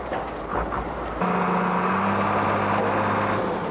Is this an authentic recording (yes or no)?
yes